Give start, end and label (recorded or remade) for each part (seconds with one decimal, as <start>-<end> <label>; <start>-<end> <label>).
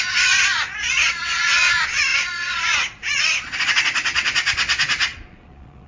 0.0-5.9 remade